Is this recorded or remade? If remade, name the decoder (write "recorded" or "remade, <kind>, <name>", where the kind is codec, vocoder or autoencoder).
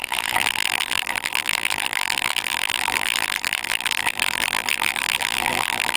remade, vocoder, BigVGAN v2